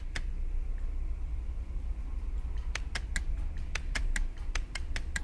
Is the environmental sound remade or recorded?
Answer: recorded